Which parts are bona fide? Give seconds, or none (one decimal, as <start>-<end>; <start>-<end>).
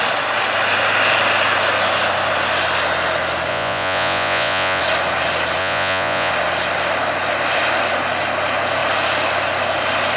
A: 0.0-3.5; 4.8-5.6; 6.3-10.2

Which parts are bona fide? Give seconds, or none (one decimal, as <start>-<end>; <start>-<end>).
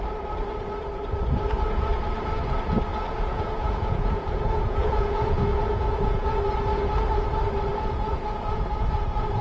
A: 0.0-2.9; 6.4-7.7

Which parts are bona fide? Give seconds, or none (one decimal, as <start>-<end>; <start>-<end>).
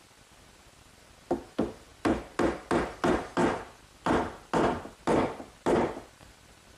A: 0.0-6.8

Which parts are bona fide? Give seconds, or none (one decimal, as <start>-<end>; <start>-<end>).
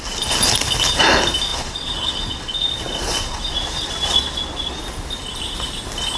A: 0.0-1.5; 4.8-6.2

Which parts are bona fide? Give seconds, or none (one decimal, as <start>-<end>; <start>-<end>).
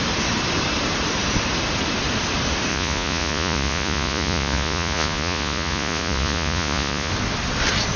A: 0.0-2.7; 7.1-8.0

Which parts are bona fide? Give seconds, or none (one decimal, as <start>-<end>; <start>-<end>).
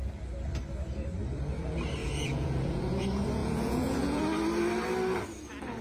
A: 0.0-2.0; 2.8-3.4; 4.2-5.8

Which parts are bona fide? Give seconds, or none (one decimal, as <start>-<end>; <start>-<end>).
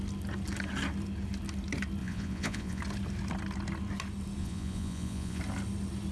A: 0.0-2.0; 2.8-4.4; 5.4-6.1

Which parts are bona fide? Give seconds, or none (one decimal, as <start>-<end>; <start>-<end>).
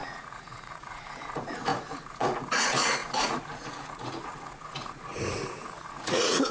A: none